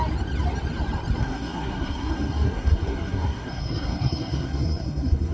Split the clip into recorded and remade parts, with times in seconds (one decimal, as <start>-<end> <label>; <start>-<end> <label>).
0.0-1.2 recorded; 1.2-5.3 remade